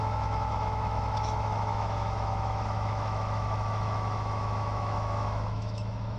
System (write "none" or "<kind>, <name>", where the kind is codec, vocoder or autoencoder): autoencoder, DAC-VAE